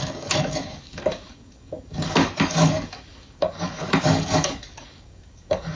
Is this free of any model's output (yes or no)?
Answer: no